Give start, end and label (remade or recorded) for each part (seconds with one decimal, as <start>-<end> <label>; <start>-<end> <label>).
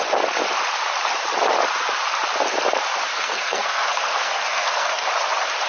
0.0-3.1 recorded; 3.1-5.1 remade; 5.1-5.7 recorded